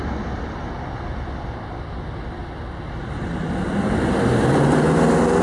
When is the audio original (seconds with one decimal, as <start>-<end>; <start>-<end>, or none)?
0.0-5.4